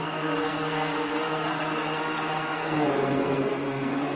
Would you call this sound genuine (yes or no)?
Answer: no